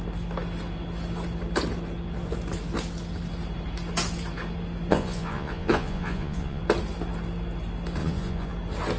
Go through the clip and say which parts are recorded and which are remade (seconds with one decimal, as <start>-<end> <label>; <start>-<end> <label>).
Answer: 0.0-4.9 recorded; 4.9-6.6 remade; 6.6-8.0 recorded; 8.0-8.5 remade; 8.5-9.0 recorded